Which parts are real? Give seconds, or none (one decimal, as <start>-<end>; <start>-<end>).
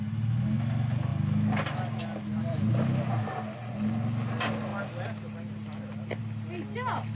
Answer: 0.0-7.1